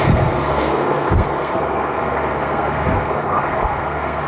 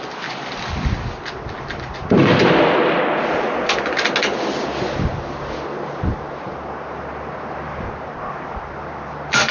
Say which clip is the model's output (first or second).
first